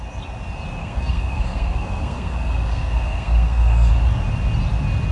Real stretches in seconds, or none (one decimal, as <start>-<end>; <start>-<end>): 0.0-0.8; 3.9-5.1